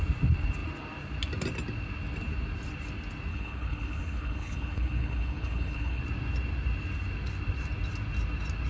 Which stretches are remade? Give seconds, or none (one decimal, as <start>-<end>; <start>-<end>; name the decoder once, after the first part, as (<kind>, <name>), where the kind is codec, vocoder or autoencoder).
3.3-6.0 (codec, HILCodec)